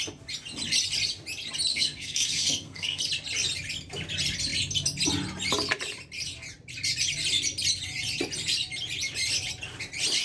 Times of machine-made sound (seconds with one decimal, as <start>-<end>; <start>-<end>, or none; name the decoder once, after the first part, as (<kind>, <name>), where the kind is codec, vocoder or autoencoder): 1.7-3.0 (codec, SNAC)